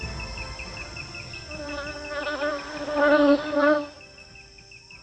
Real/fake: real